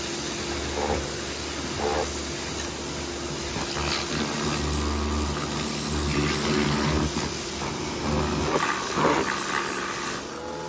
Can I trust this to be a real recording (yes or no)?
yes